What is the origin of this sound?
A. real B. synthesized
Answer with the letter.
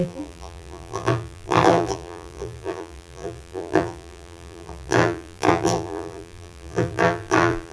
B